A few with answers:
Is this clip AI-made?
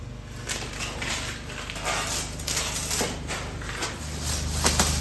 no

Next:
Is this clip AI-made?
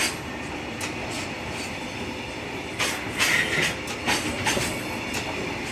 no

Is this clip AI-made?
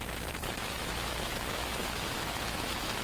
yes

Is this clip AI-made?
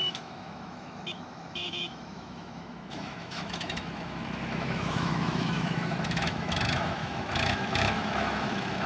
yes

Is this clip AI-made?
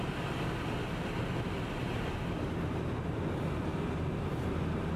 no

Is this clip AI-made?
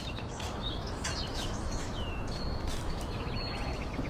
yes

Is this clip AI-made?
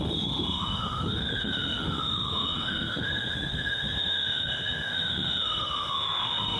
yes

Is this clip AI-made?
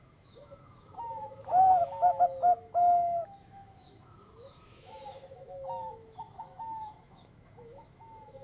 yes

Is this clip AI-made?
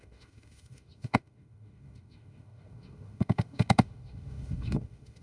yes